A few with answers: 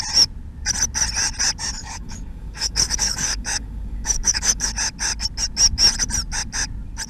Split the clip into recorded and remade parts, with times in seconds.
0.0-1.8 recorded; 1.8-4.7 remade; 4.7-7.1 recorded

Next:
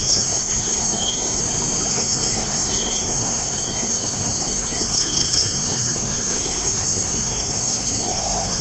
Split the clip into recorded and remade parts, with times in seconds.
0.0-1.4 remade; 1.4-1.9 recorded; 1.9-8.6 remade

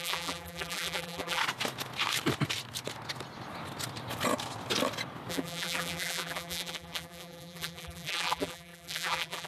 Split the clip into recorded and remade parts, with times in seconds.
0.0-1.4 remade; 1.4-5.3 recorded; 5.3-9.5 remade

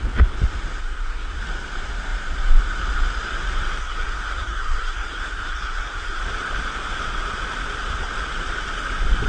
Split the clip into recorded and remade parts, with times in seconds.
0.0-0.8 recorded; 0.8-1.4 remade; 1.4-3.8 recorded; 3.8-6.2 remade; 6.2-9.3 recorded

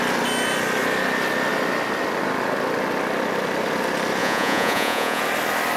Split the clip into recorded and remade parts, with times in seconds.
0.0-4.2 recorded; 4.2-5.2 remade; 5.2-5.8 recorded

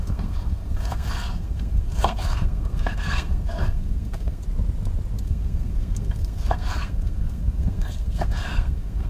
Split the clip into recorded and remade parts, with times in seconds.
0.0-4.4 remade; 4.4-5.2 recorded; 5.2-9.1 remade